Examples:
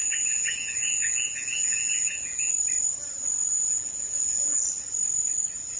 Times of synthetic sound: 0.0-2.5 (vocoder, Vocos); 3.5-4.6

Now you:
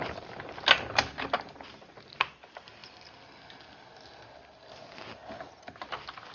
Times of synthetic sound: none

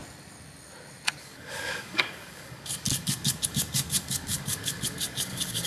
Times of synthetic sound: 1.2-5.7 (codec, DAC)

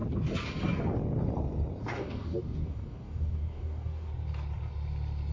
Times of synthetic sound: 1.8-4.1 (codec, DAC)